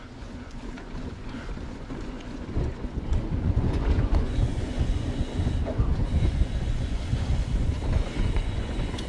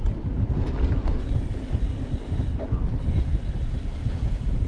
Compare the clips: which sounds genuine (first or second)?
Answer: second